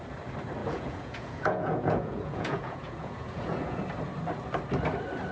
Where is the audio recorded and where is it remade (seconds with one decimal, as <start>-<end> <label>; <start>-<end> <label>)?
0.0-0.6 recorded; 0.6-3.8 remade; 3.8-5.3 recorded